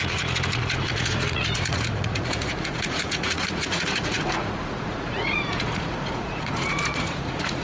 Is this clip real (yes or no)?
no